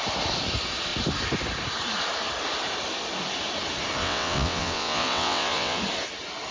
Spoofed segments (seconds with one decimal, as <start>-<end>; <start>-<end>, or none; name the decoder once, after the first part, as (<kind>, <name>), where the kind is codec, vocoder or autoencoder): 4.0-5.8 (vocoder, WaveNeXt)